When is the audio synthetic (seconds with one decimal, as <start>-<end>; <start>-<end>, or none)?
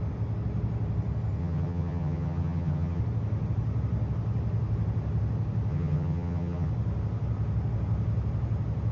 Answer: 1.4-3.0; 5.7-6.7